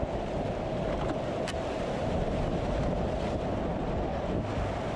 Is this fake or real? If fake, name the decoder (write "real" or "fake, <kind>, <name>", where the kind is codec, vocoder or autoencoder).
real